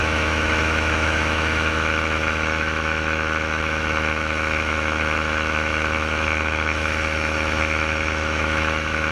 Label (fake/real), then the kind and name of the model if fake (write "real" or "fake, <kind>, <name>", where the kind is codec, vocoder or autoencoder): fake, autoencoder, DAC-VAE